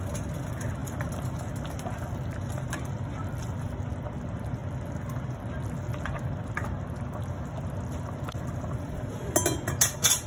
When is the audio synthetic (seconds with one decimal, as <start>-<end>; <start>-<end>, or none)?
none